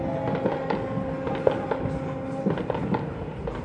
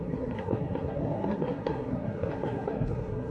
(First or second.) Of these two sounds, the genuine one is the first